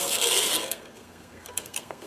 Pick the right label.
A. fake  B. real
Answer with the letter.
A